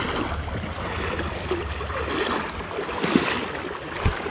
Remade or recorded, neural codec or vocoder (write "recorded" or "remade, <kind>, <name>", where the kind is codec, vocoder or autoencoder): recorded